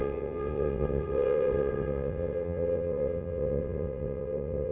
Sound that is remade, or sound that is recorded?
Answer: remade